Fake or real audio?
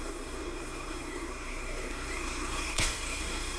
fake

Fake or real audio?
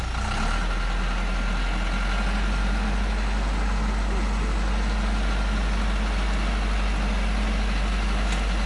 real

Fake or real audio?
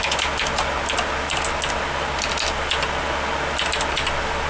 real